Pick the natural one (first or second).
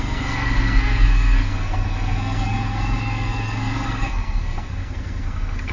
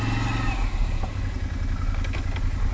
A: second